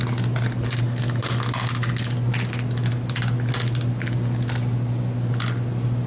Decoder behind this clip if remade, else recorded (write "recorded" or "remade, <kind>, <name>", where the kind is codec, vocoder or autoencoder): recorded